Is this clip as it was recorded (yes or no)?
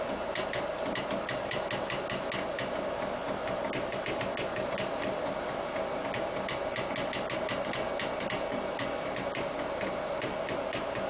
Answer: yes